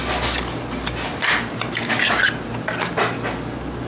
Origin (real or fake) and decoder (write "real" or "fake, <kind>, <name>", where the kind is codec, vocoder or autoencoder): real